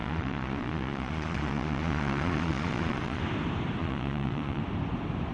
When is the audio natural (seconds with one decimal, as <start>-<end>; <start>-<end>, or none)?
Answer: 3.2-3.8; 4.6-5.3